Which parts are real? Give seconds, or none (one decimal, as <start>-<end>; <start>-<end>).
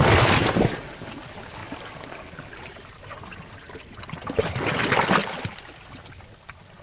0.0-6.8